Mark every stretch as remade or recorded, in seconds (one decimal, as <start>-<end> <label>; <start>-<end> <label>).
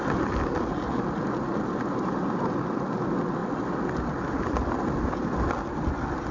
0.0-6.3 recorded